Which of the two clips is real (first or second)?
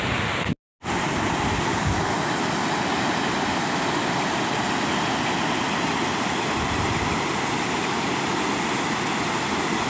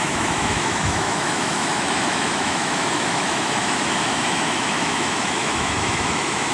first